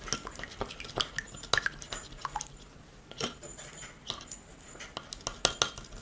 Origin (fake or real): real